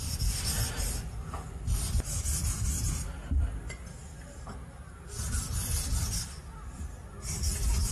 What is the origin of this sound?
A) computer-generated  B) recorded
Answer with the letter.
B